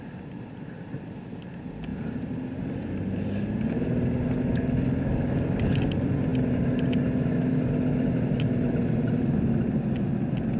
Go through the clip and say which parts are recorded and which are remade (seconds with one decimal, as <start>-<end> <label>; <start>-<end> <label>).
0.0-10.6 recorded